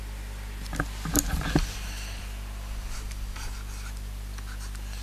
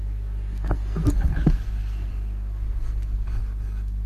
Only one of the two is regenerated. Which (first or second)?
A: second